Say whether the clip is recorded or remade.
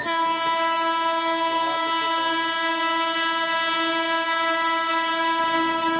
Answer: recorded